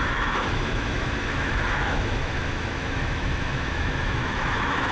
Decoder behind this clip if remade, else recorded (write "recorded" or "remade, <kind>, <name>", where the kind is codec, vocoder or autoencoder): remade, autoencoder, DAC-VAE